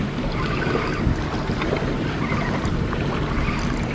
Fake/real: real